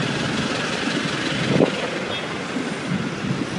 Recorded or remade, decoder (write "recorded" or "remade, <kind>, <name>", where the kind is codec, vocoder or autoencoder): recorded